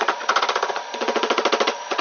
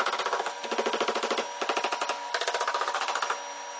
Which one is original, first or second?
second